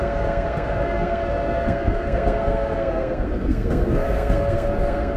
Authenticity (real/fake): fake